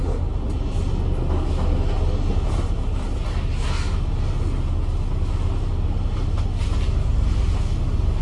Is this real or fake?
real